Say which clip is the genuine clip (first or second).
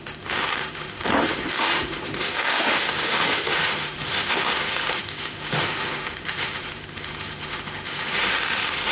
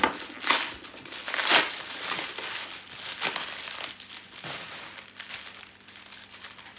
second